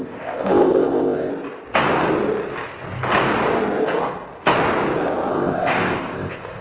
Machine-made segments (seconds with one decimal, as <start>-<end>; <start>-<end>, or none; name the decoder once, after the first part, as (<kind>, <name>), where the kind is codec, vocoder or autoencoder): 0.0-1.3 (codec, ZipCodec); 5.3-6.6